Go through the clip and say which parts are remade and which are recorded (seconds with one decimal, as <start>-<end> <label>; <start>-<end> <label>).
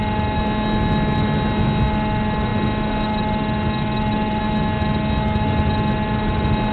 0.0-6.7 recorded